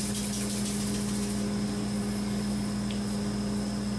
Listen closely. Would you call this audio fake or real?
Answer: real